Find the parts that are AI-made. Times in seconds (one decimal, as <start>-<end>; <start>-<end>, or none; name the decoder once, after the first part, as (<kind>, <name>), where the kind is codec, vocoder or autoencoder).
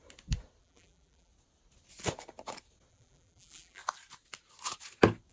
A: 0.6-1.3 (vocoder, BigVGAN v2); 2.9-3.8